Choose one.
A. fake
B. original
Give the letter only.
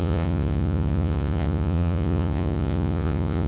A